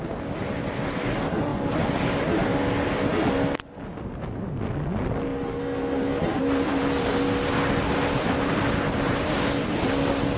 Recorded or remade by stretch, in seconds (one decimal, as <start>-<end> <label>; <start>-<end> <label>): 0.0-10.4 recorded

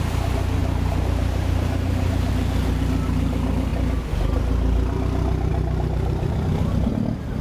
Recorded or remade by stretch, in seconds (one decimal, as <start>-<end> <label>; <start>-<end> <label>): 0.0-0.6 recorded; 0.6-2.3 remade; 2.3-5.5 recorded; 5.5-6.9 remade; 6.9-7.4 recorded

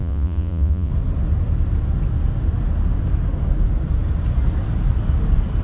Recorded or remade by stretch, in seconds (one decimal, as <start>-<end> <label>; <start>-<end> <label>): 0.0-0.9 remade; 0.9-5.6 recorded